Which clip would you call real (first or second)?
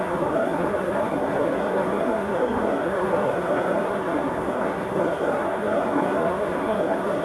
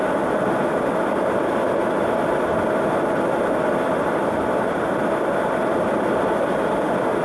second